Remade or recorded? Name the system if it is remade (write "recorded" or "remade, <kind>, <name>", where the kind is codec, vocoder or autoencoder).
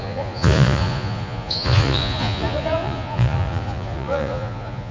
remade, vocoder, Vocos